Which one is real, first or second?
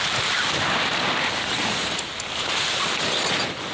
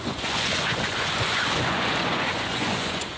first